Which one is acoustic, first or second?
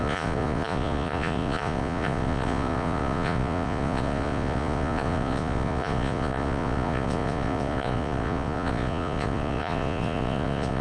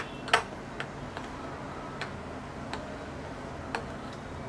second